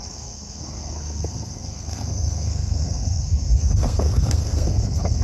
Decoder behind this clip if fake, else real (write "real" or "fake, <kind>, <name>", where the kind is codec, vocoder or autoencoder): fake, codec, SNAC